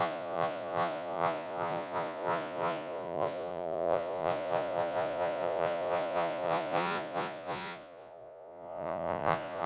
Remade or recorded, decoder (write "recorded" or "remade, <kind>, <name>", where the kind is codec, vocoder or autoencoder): remade, vocoder, Vocos